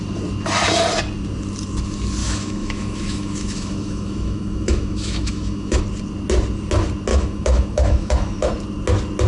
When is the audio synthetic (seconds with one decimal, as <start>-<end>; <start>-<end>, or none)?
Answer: 2.2-5.8; 7.1-8.5

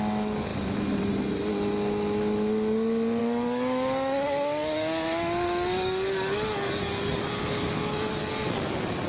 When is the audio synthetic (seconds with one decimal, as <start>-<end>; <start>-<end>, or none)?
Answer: 3.2-8.2

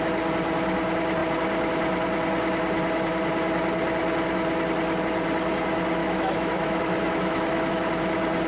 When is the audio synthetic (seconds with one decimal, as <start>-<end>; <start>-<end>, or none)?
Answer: 6.0-7.7